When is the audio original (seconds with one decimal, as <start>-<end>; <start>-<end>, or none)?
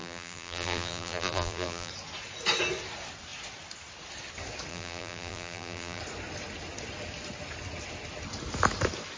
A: 1.9-4.7; 6.0-9.2